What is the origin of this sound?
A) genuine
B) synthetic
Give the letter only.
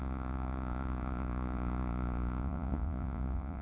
B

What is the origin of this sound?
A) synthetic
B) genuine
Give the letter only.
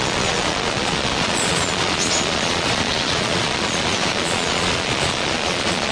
A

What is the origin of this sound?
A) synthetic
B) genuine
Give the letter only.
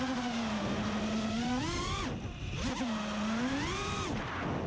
B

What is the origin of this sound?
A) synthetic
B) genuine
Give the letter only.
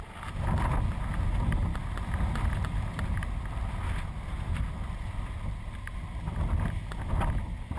B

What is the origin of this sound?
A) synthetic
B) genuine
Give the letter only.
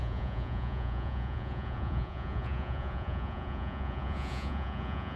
A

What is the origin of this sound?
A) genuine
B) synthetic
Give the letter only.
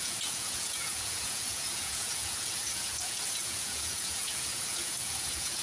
B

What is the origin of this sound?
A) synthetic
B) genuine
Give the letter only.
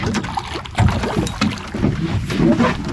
B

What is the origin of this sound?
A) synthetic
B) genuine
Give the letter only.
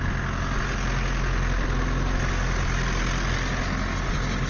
B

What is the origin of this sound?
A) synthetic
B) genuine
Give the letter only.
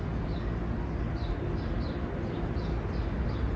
B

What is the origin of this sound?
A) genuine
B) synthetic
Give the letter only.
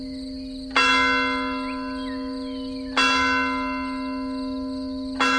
A